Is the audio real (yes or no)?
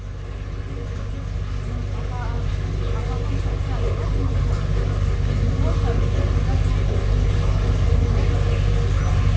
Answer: yes